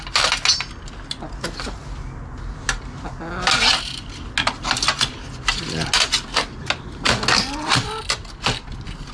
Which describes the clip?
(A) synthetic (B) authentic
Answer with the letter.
B